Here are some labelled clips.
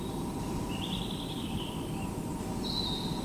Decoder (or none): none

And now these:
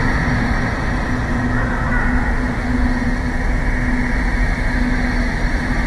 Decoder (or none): none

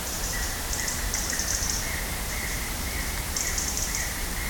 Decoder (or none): vocoder, BigVGAN v2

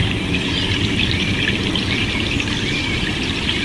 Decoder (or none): vocoder, BigVGAN v2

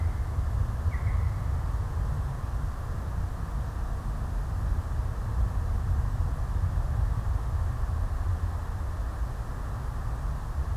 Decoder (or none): none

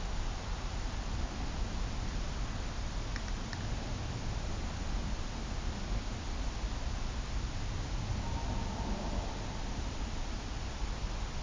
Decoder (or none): none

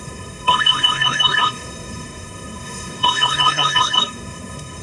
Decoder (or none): codec, SNAC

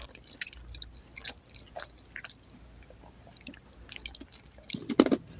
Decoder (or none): none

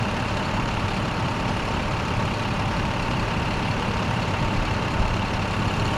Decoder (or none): vocoder, BigVGAN v2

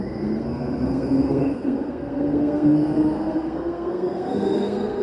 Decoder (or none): codec, SNAC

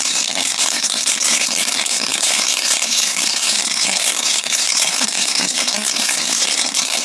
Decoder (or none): codec, SNAC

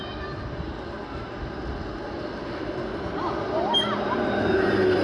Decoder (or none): none